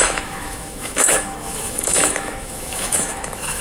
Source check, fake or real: fake